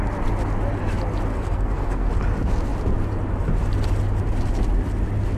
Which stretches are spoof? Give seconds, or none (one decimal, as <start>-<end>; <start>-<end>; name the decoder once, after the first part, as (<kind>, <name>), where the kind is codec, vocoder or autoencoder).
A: 1.3-2.1 (codec, SNAC)